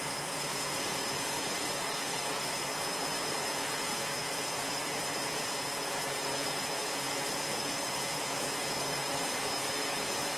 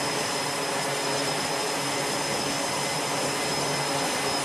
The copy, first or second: first